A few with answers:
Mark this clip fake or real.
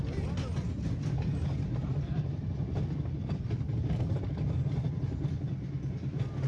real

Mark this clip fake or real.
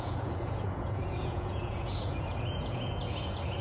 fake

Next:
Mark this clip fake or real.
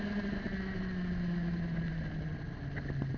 real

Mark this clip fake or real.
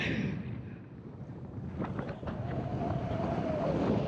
real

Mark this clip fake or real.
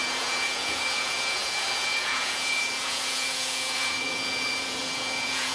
fake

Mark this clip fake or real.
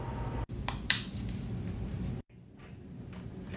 real